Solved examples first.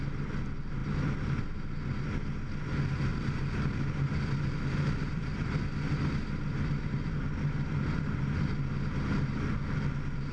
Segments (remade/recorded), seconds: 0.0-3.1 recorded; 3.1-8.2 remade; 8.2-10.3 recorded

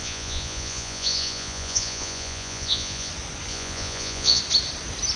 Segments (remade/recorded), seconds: 0.0-3.1 remade; 3.1-3.5 recorded; 3.5-4.4 remade; 4.4-5.2 recorded

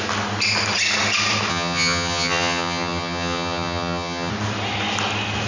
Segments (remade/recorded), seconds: 0.0-1.5 recorded; 1.5-4.3 remade; 4.3-5.5 recorded

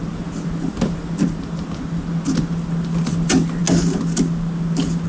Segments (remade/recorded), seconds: 0.0-5.1 recorded

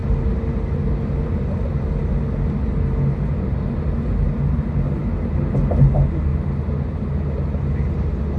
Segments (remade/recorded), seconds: 0.0-8.4 recorded

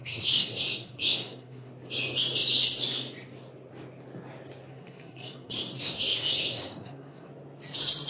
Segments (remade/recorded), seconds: 0.0-1.7 remade; 1.7-4.7 recorded; 4.7-7.3 remade; 7.3-8.1 recorded